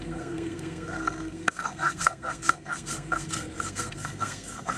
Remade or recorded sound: remade